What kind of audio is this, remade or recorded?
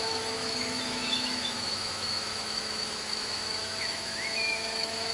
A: remade